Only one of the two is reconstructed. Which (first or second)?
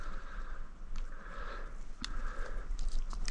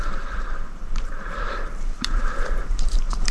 second